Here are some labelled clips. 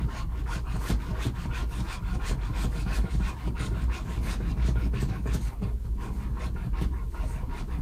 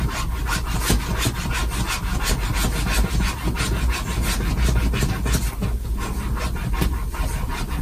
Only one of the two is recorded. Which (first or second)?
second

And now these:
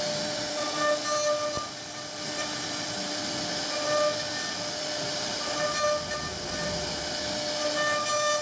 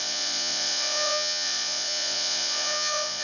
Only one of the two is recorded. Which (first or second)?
first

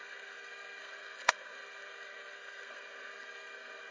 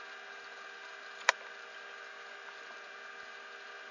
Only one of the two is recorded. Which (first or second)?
second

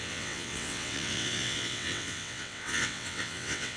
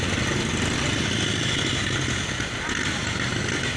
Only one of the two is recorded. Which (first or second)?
second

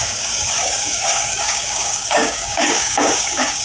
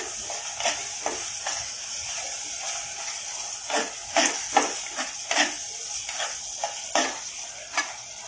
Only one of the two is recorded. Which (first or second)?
second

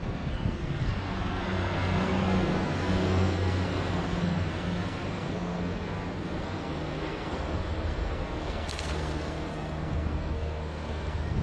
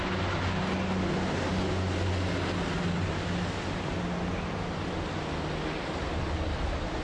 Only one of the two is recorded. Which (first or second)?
second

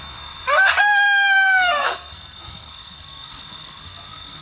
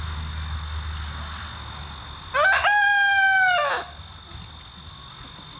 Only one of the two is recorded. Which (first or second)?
second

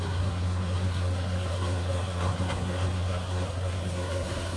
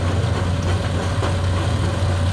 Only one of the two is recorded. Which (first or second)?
second